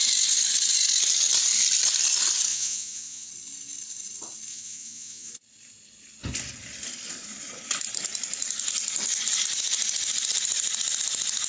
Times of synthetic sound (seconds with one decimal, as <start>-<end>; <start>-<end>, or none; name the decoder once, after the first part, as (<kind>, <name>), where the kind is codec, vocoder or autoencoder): 2.5-3.3 (vocoder, Vocos); 4.5-5.3